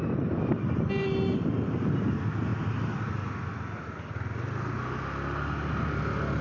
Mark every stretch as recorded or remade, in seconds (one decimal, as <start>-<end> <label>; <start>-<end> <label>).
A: 0.0-0.9 remade; 0.9-6.4 recorded